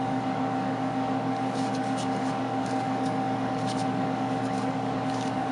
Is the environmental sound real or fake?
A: fake